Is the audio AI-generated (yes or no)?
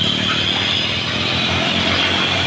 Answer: no